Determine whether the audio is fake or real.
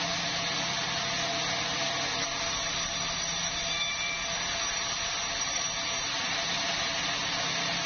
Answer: real